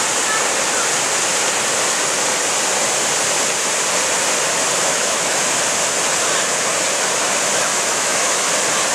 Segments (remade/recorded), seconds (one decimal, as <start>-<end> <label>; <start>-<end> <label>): 0.0-4.8 recorded; 4.8-5.4 remade; 5.4-7.7 recorded; 7.7-8.5 remade; 8.5-8.9 recorded